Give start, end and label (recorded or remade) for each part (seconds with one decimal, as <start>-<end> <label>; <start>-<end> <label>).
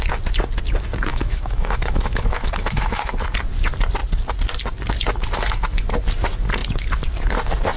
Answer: 0.0-1.1 recorded; 1.1-3.1 remade; 3.1-7.8 recorded